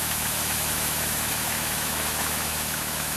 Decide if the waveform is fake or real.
fake